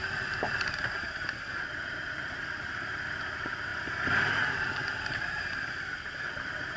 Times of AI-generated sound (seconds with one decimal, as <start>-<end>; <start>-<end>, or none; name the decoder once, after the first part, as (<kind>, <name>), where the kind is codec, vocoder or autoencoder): none